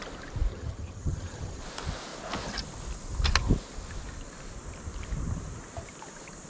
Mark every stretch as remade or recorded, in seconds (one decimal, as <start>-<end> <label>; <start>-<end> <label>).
0.0-0.5 recorded; 0.5-1.6 remade; 1.6-6.5 recorded